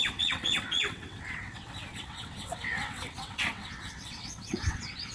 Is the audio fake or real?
fake